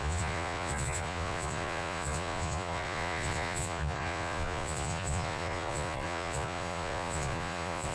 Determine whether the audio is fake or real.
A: fake